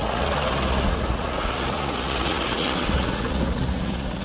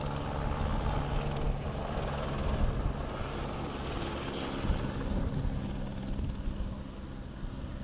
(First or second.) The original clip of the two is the second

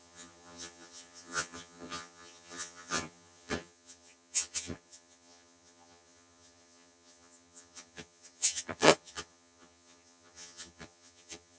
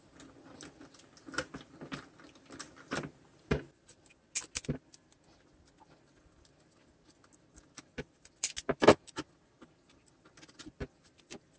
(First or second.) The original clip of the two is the second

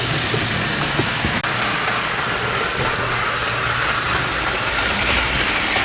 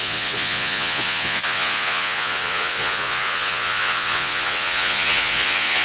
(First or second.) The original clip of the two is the first